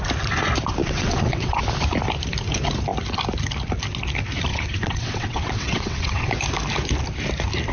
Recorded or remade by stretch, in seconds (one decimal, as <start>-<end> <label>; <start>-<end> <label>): 0.0-0.8 recorded; 0.8-1.6 remade; 1.6-4.5 recorded; 4.5-6.3 remade; 6.3-7.7 recorded